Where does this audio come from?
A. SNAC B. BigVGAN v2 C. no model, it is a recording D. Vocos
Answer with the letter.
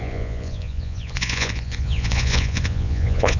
D